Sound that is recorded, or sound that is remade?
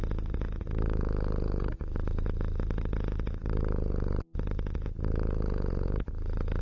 recorded